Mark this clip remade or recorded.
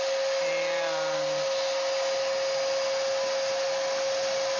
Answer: recorded